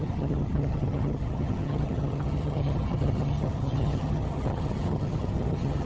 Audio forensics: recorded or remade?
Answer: remade